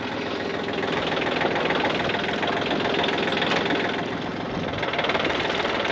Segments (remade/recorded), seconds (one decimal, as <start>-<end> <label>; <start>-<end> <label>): 0.0-5.9 recorded